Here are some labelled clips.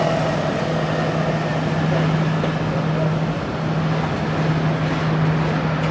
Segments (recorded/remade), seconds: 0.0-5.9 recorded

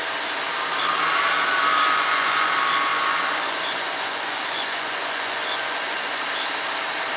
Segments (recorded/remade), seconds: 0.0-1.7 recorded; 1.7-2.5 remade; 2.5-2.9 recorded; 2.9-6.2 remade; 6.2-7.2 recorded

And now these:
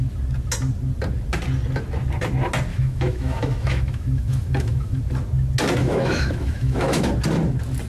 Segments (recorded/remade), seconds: 0.0-2.7 recorded; 2.7-5.0 remade; 5.0-5.8 recorded; 5.8-7.1 remade; 7.1-7.9 recorded

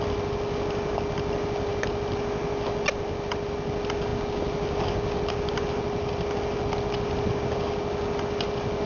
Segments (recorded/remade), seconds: 0.0-8.9 recorded

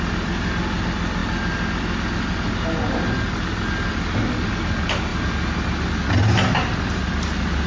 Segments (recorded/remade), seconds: 0.0-7.7 recorded